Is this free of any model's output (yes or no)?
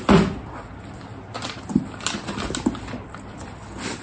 yes